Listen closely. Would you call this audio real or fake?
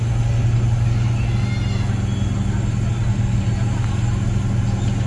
real